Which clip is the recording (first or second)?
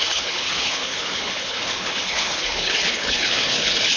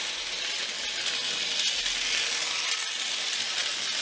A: second